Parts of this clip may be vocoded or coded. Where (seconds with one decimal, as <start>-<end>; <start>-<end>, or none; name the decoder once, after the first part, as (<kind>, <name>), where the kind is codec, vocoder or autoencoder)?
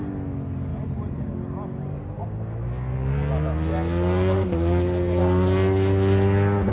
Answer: none